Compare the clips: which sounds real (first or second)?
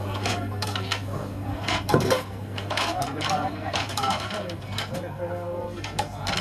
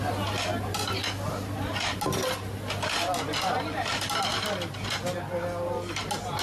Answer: second